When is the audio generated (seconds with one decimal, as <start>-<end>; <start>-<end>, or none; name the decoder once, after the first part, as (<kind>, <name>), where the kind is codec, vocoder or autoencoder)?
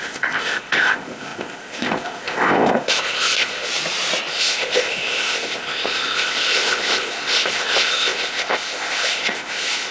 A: 0.0-3.7 (codec, ZipCodec); 4.3-9.9